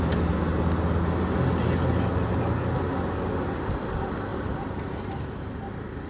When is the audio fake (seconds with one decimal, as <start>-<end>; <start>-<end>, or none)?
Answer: 4.3-5.3